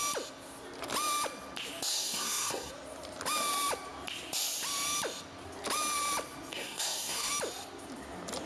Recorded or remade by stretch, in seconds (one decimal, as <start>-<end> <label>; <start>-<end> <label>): 0.0-1.9 recorded; 1.9-2.7 remade; 2.7-6.5 recorded; 6.5-7.3 remade; 7.3-8.5 recorded